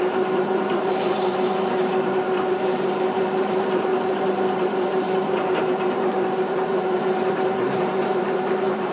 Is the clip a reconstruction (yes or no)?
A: yes